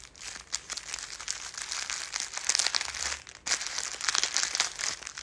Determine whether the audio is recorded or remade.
recorded